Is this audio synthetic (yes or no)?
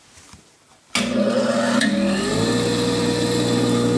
no